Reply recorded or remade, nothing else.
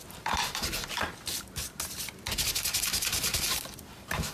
recorded